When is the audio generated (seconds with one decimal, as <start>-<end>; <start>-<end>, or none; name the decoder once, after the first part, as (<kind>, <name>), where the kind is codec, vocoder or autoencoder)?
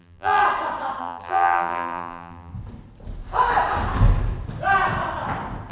0.0-0.4 (vocoder, BigVGAN v2); 1.0-2.5